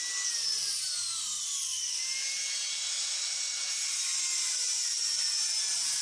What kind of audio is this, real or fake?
real